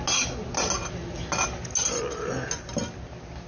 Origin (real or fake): real